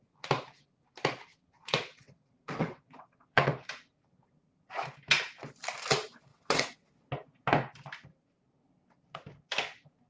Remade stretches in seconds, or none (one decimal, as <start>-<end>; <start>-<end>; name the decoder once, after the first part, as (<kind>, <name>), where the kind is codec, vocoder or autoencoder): 1.3-3.5 (vocoder, WaveNeXt); 6.3-6.9